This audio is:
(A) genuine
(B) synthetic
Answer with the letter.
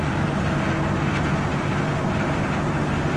A